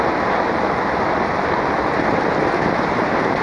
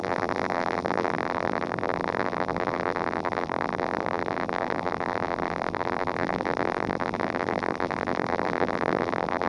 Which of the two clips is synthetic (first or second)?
second